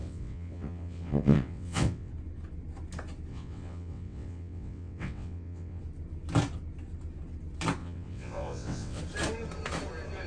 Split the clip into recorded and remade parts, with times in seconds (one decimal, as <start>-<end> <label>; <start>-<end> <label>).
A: 0.0-2.1 remade; 2.1-3.3 recorded; 3.3-5.8 remade; 5.8-7.8 recorded; 7.8-9.0 remade; 9.0-10.3 recorded